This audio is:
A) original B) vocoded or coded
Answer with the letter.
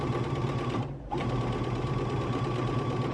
A